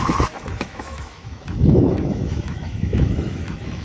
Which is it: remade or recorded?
remade